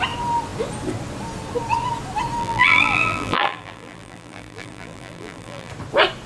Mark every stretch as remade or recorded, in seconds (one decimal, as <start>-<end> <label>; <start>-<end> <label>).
0.0-2.4 recorded; 2.4-5.7 remade; 5.7-6.3 recorded